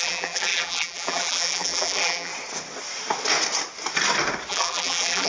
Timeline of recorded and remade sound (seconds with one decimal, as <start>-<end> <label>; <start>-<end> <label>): 0.0-2.3 remade; 2.3-4.5 recorded; 4.5-5.3 remade